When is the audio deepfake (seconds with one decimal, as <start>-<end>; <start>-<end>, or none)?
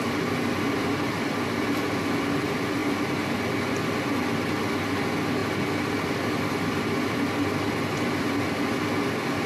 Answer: none